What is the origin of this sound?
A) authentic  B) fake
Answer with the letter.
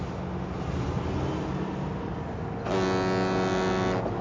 A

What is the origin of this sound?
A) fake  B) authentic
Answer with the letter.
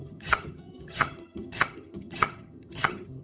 A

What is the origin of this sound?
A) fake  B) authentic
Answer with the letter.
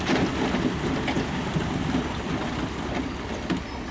B